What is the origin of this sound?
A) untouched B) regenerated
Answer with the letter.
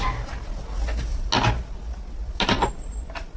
A